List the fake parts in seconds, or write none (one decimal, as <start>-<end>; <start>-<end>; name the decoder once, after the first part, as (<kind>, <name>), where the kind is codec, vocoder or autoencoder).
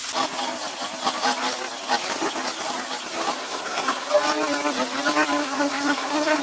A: 3.4-4.1 (codec, SNAC); 5.4-6.4